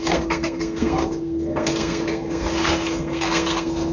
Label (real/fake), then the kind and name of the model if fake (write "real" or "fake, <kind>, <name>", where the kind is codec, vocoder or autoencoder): fake, codec, SNAC